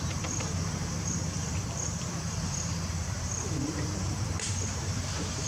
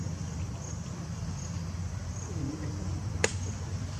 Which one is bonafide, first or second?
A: second